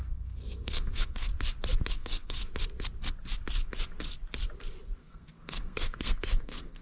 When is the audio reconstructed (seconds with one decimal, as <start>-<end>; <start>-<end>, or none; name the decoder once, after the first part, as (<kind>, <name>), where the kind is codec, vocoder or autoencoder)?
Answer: 0.0-1.3 (codec, SNAC); 1.9-2.4; 5.0-6.8